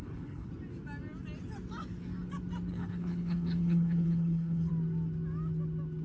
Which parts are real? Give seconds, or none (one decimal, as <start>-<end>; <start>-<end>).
0.5-2.7; 4.7-6.0